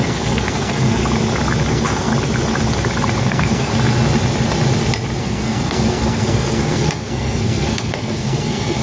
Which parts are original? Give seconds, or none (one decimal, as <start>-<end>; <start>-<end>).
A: 1.0-1.7; 2.1-3.2; 3.7-5.2

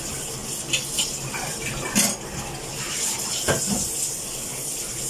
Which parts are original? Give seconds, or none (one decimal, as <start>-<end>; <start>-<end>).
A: 0.0-5.1

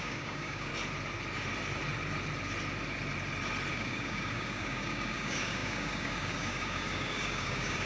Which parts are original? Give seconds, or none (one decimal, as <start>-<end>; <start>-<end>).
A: 0.7-3.7